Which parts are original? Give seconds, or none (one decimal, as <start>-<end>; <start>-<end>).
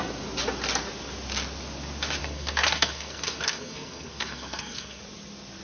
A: 0.0-2.2; 5.0-5.6